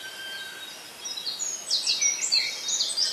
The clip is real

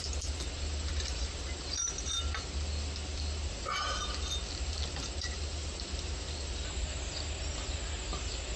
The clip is real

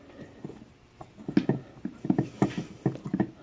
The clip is real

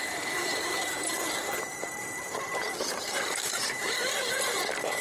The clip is fake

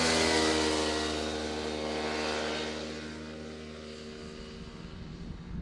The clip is real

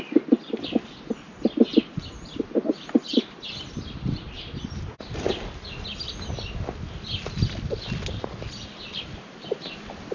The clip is real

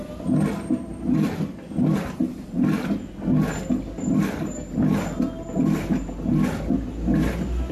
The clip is real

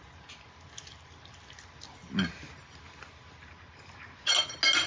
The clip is real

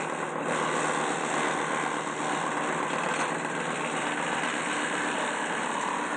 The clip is real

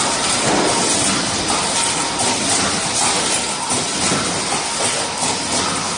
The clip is real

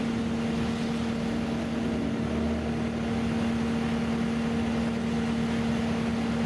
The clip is real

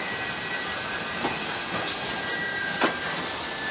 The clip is real